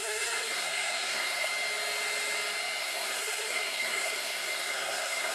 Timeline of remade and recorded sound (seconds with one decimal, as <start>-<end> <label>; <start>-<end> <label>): 0.0-1.5 remade; 1.5-2.8 recorded; 2.8-5.3 remade